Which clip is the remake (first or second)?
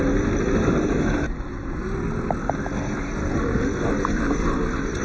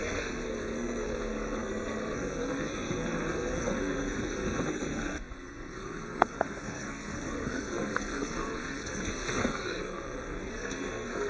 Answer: second